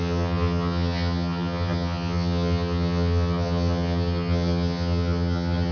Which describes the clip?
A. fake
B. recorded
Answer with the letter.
A